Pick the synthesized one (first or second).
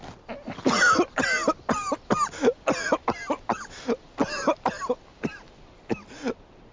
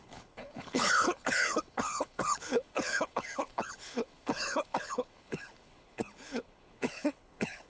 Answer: second